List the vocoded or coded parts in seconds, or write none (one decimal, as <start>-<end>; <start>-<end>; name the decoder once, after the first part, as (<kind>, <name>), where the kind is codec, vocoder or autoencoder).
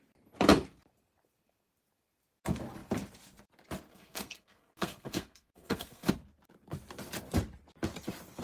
3.9-6.1 (codec, SNAC)